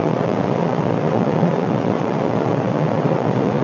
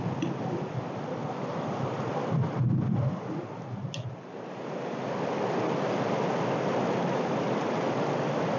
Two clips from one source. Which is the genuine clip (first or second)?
second